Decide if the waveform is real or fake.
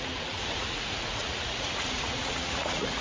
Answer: fake